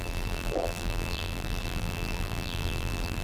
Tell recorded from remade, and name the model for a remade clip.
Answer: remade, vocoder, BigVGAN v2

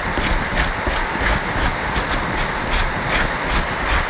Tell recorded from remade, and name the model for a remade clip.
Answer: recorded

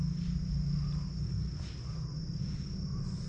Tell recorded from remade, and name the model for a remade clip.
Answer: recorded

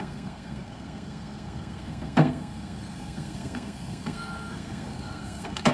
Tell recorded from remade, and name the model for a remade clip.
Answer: remade, codec, SNAC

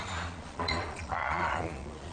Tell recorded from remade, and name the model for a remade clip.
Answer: remade, vocoder, Vocos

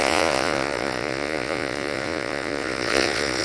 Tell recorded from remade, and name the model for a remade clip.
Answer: remade, vocoder, Vocos